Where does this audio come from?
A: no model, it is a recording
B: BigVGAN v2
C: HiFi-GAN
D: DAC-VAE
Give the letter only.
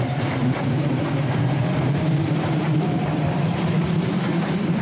B